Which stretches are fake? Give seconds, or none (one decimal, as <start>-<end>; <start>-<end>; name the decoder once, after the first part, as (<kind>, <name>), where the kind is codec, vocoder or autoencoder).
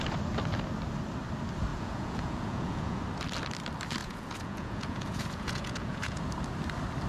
1.7-3.0 (vocoder, Vocos); 4.0-6.2